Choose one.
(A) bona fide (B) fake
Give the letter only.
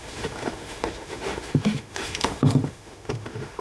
B